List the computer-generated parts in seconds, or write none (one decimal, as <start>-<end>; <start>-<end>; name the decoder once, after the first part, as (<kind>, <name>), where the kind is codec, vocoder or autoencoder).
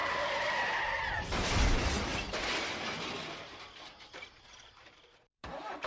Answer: 0.8-2.1 (vocoder, BigVGAN v2); 4.3-5.9